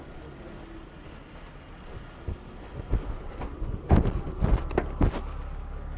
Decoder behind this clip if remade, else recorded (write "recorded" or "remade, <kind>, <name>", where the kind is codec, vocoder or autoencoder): recorded